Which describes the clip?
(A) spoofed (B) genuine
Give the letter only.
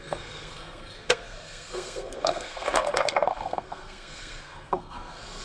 A